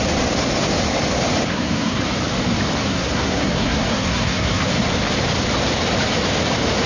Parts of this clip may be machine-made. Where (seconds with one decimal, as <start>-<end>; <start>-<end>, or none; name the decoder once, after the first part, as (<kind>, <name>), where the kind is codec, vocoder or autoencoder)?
1.5-2.0 (codec, SNAC); 2.9-4.6